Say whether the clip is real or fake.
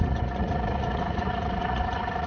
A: fake